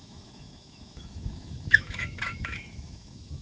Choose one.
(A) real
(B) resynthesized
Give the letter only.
B